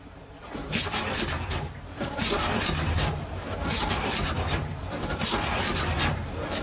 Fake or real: fake